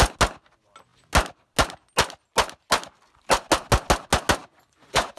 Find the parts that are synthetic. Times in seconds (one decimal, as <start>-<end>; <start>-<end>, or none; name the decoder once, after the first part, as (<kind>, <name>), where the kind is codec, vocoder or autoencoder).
4.4-5.2 (vocoder, Vocos)